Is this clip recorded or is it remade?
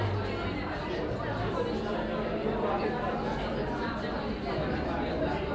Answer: recorded